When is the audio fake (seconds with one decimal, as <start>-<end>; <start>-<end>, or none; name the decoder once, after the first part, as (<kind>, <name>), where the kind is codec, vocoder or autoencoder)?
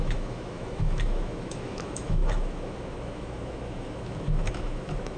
0.0-5.2 (autoencoder, DAC-VAE)